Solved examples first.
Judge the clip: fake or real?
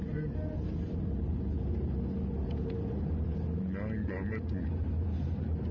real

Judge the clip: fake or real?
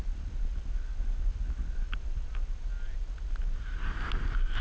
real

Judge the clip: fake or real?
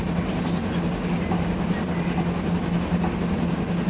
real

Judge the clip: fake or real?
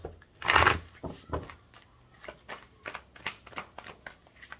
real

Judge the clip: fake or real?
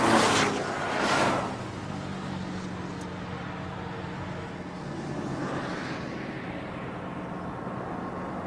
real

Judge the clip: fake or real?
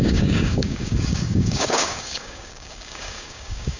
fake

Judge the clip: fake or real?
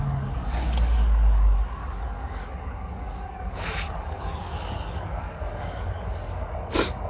fake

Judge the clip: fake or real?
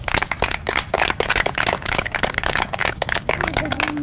fake